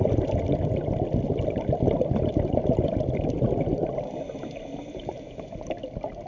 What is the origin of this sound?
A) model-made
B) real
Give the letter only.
B